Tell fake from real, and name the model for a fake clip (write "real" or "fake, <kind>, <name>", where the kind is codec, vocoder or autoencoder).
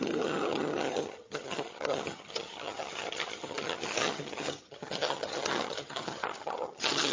fake, vocoder, HiFi-GAN